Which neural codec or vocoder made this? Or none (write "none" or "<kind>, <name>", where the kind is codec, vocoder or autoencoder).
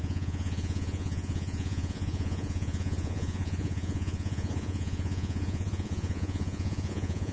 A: vocoder, Vocos